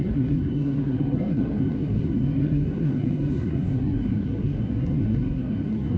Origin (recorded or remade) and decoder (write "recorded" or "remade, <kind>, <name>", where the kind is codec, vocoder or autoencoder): remade, codec, SNAC